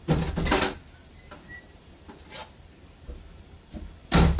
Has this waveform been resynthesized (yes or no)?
no